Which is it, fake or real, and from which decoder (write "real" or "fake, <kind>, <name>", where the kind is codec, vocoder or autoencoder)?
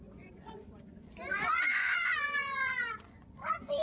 fake, vocoder, Vocos